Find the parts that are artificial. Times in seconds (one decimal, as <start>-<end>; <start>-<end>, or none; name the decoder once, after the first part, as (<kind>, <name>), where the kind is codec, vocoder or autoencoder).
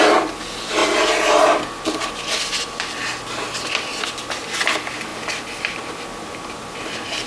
none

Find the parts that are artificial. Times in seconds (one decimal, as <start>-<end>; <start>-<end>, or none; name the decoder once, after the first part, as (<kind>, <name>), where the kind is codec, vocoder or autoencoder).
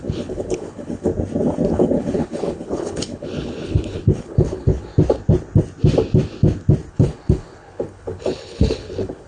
0.0-1.1 (codec, HILCodec); 1.7-4.9; 6.9-9.3